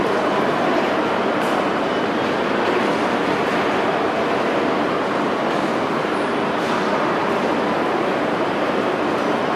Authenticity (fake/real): real